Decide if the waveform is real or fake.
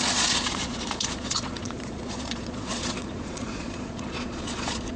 fake